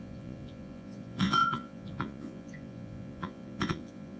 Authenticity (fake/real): fake